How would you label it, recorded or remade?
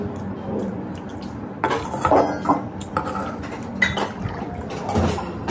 recorded